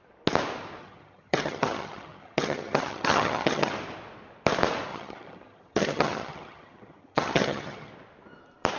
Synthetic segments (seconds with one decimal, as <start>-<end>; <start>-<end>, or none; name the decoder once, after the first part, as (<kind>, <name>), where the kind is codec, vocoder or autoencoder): 0.8-3.7 (vocoder, HiFi-GAN); 4.9-7.9